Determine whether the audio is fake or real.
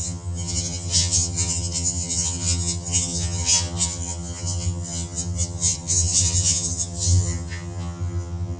fake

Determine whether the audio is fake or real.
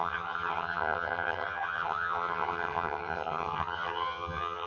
fake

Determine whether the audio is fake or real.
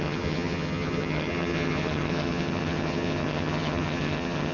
fake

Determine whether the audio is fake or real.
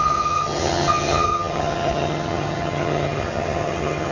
fake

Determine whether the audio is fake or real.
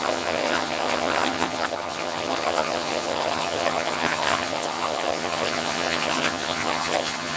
fake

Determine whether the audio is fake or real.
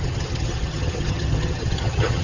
fake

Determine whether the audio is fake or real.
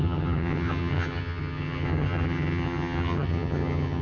fake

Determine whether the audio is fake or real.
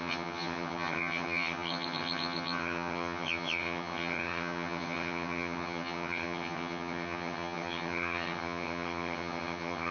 fake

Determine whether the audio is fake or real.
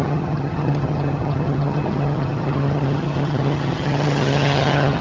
fake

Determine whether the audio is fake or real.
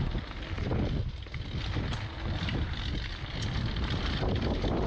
real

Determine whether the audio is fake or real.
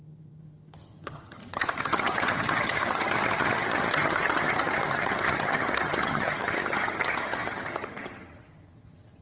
fake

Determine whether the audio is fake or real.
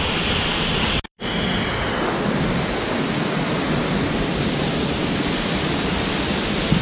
real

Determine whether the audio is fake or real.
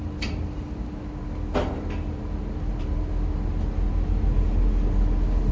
real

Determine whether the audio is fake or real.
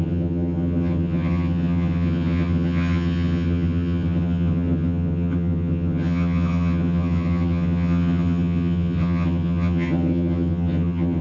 fake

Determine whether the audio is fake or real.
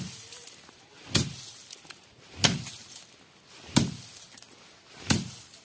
real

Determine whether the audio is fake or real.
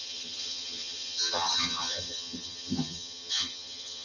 fake